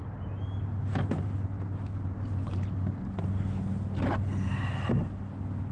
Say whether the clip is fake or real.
real